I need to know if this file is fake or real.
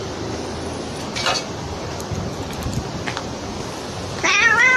real